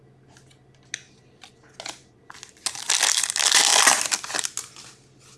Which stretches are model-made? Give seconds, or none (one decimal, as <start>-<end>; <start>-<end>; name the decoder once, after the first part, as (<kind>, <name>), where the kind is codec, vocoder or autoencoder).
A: none